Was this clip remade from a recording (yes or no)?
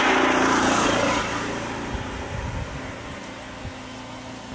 no